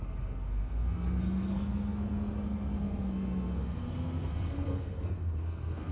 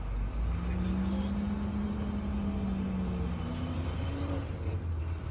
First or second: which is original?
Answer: second